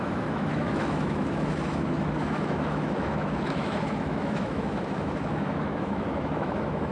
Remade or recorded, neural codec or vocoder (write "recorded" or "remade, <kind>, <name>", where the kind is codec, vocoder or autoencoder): remade, autoencoder, DAC-VAE